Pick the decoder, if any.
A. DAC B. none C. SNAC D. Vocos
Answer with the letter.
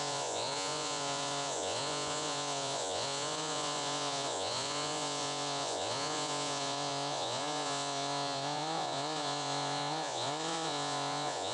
D